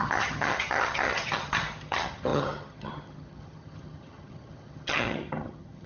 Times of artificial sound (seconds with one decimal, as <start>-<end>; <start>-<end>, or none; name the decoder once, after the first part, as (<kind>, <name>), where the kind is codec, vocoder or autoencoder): 0.0-5.9 (vocoder, HiFi-GAN)